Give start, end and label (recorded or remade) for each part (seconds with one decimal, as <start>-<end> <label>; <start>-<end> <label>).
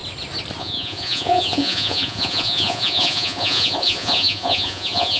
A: 0.0-0.6 recorded; 0.6-5.2 remade